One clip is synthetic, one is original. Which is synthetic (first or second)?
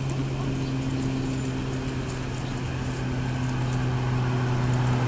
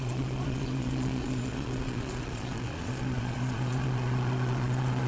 second